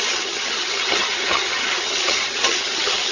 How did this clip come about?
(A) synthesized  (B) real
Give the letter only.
A